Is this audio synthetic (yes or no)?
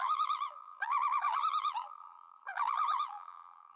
yes